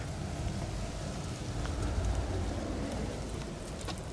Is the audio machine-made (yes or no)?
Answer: no